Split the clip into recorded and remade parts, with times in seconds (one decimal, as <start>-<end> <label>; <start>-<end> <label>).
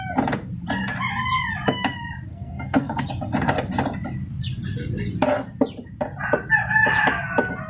0.0-2.3 recorded; 2.3-3.1 remade; 3.1-7.7 recorded